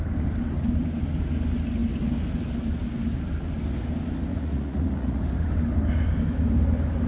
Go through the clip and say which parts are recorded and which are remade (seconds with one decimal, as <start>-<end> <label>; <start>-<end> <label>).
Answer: 0.0-4.3 recorded; 4.3-5.2 remade; 5.2-7.1 recorded